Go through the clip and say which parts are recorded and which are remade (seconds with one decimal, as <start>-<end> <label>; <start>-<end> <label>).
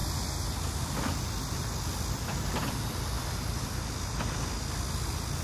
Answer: 0.0-5.4 recorded